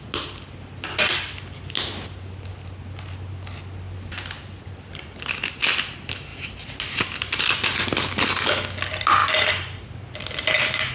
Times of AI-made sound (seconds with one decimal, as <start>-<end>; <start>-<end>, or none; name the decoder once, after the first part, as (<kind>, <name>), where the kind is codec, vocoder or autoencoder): none